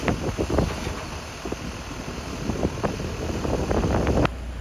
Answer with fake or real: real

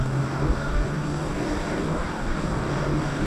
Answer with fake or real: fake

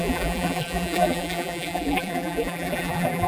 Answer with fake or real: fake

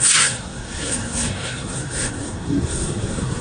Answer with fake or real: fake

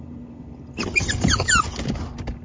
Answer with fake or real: real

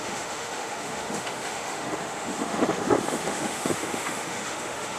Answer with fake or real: fake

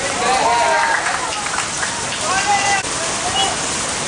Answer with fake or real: real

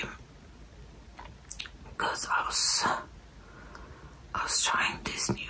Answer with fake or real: real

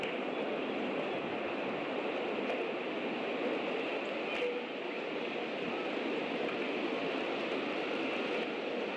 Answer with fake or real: real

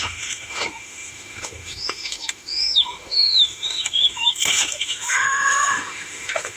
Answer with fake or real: fake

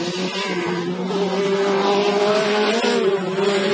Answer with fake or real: real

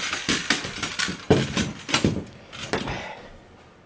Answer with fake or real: real